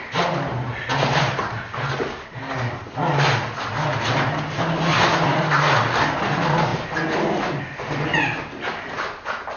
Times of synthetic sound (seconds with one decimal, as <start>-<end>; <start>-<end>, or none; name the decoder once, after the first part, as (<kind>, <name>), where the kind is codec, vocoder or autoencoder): none